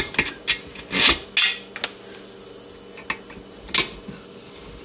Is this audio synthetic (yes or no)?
no